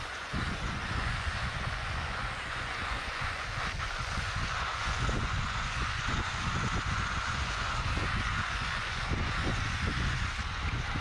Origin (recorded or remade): remade